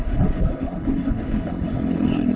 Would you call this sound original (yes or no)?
no